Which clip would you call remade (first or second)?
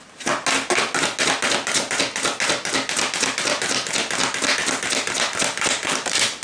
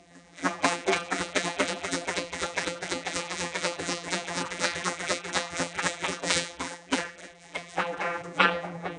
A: second